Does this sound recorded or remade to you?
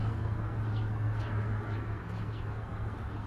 remade